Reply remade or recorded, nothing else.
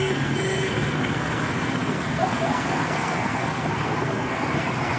remade